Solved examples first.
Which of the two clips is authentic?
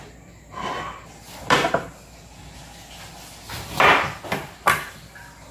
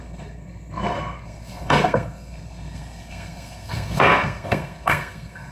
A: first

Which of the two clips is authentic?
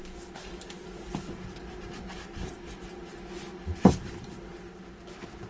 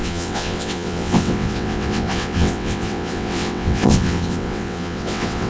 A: first